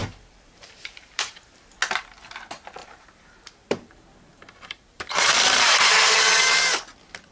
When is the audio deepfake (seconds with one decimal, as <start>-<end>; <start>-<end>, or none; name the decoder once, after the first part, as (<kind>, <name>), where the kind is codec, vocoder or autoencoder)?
0.0-1.5 (vocoder, BigVGAN v2); 2.8-6.2